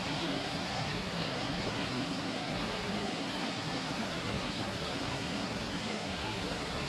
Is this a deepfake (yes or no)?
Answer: yes